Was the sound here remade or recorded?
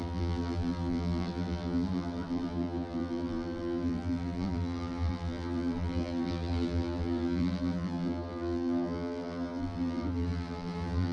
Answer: remade